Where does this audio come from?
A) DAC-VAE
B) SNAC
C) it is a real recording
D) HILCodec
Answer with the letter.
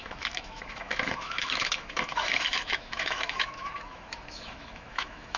A